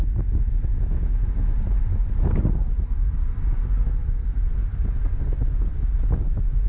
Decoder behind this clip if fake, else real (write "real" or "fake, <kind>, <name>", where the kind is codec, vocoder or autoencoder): real